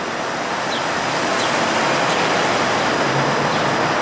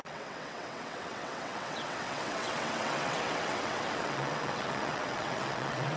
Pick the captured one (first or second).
first